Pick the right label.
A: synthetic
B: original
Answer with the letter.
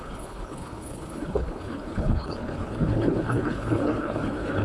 A